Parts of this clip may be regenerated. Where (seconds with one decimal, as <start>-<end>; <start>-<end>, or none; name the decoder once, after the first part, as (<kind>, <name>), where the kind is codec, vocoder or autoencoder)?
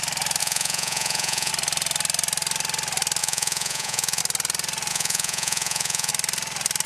0.4-1.5 (vocoder, Vocos); 3.2-4.2; 4.9-6.1